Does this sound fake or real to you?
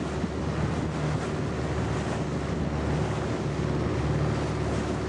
real